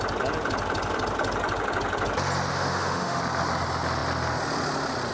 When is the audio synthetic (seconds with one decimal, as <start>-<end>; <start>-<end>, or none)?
2.5-3.2